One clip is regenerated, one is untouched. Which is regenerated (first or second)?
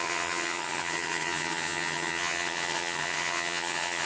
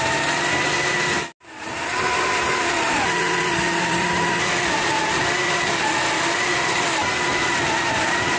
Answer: first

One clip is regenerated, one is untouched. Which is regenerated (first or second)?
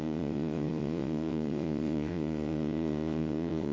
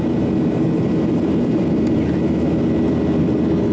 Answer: first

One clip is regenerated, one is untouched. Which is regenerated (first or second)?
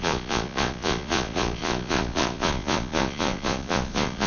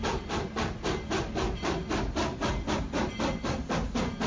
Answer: first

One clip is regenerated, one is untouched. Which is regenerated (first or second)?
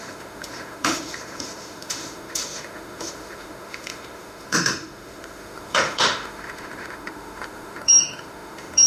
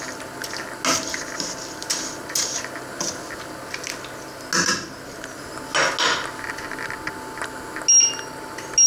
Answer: first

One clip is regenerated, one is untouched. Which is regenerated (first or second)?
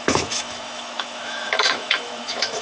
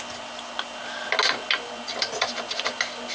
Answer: first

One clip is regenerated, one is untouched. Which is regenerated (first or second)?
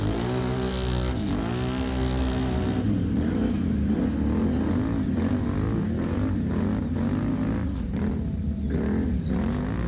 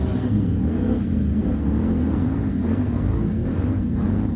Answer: second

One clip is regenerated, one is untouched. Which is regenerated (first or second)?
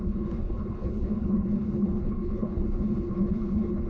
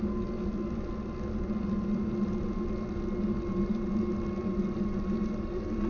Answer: first